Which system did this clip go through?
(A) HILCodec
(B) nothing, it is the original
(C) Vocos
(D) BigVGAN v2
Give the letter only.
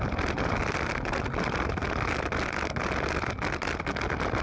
B